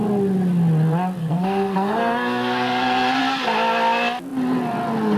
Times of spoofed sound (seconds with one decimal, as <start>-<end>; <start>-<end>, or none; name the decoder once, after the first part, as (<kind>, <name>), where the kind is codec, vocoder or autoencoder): 1.2-3.2 (codec, SNAC)